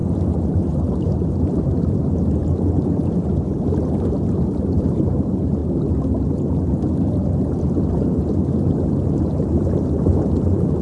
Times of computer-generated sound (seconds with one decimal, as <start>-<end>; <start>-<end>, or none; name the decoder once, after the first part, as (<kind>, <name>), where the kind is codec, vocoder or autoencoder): 0.0-5.6 (vocoder, BigVGAN v2); 7.1-10.8